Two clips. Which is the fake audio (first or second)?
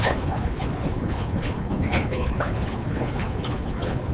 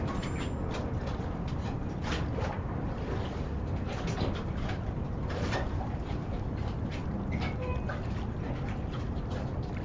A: first